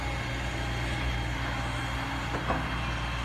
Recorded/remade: recorded